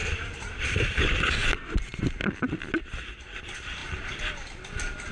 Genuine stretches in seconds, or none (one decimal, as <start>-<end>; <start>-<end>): 0.0-5.1